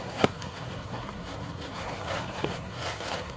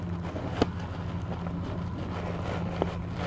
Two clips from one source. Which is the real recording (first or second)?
second